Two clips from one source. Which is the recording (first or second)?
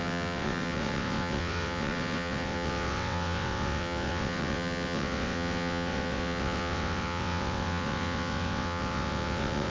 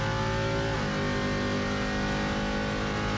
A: second